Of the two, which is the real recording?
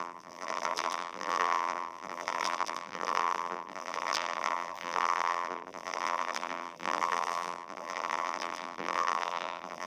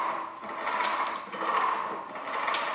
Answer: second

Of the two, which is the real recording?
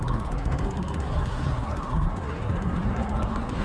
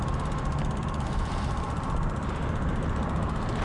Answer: second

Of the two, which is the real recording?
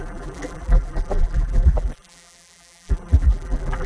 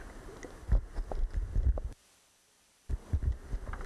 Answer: second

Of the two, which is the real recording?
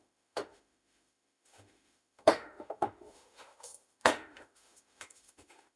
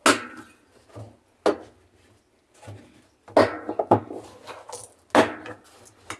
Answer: second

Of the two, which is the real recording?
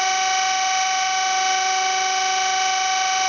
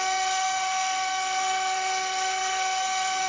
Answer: first